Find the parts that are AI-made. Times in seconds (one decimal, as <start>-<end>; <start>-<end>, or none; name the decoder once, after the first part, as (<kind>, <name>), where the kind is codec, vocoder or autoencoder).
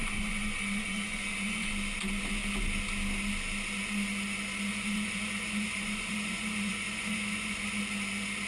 0.0-1.7 (vocoder, Vocos); 4.7-7.8